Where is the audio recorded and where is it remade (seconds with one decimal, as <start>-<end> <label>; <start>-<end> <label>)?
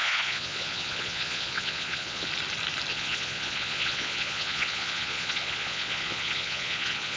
0.0-2.3 remade; 2.3-2.9 recorded; 2.9-7.2 remade